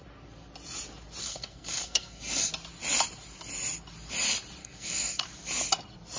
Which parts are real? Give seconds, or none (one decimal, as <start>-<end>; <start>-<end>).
0.0-1.2; 2.5-4.6; 5.2-6.2